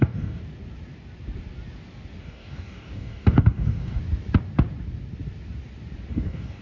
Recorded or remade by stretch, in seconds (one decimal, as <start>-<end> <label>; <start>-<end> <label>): 0.0-0.4 remade; 0.4-2.2 recorded; 2.2-4.0 remade; 4.0-6.1 recorded; 6.1-6.6 remade